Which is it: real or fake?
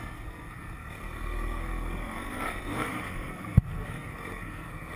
fake